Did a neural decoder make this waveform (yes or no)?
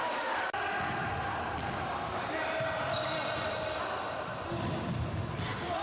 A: no